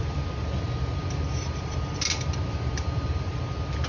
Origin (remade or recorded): recorded